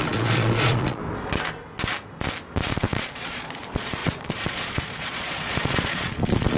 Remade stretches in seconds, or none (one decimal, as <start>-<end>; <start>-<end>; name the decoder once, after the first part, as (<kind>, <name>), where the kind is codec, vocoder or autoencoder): 0.0-1.0 (vocoder, Vocos); 2.7-6.6